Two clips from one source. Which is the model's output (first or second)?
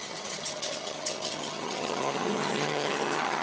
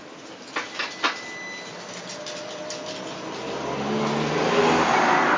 first